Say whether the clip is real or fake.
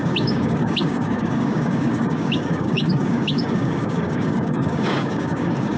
fake